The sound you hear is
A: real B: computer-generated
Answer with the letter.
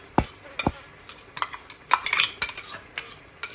A